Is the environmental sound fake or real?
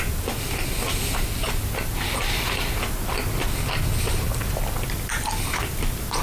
real